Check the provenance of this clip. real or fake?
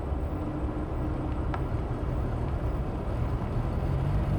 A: real